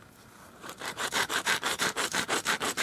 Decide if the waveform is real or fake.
fake